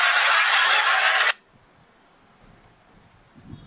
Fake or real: real